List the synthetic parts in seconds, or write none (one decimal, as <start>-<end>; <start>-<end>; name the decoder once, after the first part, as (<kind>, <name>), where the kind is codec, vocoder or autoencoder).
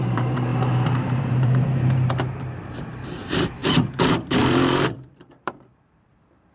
0.0-6.5 (vocoder, BigVGAN v2)